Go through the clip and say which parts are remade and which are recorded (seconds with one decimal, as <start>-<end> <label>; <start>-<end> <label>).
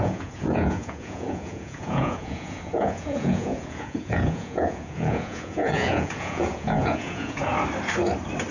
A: 0.0-7.4 remade; 7.4-8.5 recorded